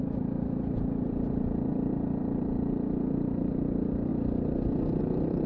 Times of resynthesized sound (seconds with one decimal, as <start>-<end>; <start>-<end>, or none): 0.0-4.1; 5.0-5.5